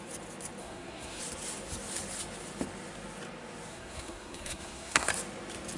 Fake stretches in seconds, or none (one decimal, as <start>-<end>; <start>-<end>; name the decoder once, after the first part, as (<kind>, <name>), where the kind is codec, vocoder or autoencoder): 0.6-1.2 (codec, SNAC); 3.7-5.1